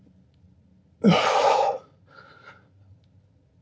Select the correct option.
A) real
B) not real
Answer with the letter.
A